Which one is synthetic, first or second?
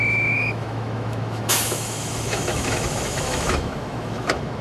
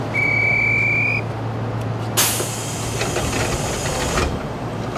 first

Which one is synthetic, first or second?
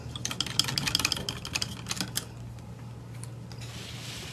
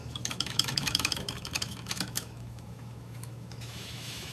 second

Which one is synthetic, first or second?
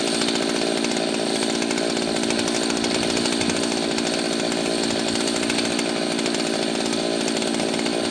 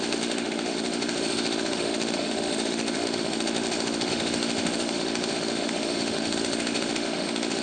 second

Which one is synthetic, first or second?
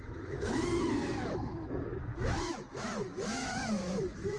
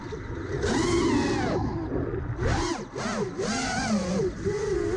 first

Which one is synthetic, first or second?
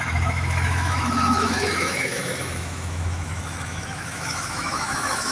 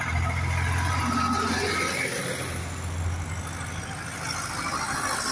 first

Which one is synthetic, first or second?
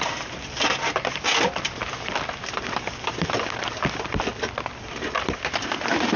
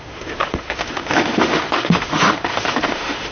second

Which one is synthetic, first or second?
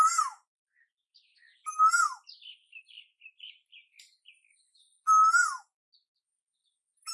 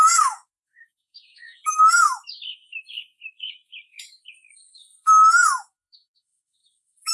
second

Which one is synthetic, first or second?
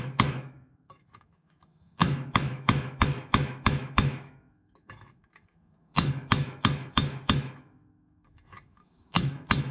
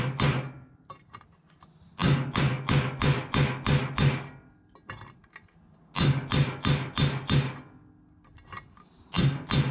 first